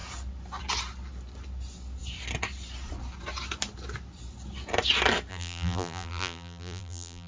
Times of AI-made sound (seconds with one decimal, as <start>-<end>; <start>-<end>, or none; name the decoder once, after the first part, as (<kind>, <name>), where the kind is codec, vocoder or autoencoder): 5.3-7.3 (vocoder, BigVGAN v2)